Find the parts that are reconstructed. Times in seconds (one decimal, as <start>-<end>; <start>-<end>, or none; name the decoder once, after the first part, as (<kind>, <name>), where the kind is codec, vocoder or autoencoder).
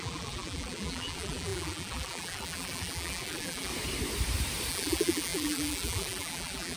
0.0-3.7 (vocoder, BigVGAN v2); 4.7-6.8